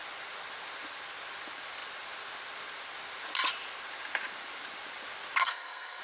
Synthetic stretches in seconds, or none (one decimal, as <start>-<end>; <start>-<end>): 5.4-6.0